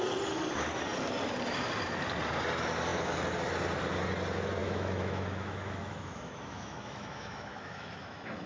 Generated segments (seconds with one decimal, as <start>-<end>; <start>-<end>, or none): 4.6-8.5